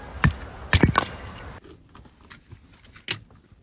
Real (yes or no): yes